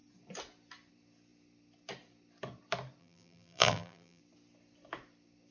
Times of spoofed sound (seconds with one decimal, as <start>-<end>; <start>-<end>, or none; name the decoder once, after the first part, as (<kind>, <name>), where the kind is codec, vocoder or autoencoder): 3.0-4.2 (vocoder, BigVGAN v2)